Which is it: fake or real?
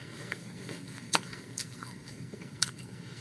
fake